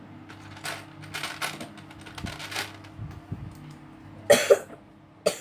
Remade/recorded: recorded